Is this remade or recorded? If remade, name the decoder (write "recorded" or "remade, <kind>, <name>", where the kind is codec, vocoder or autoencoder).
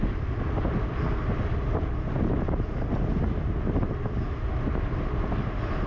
recorded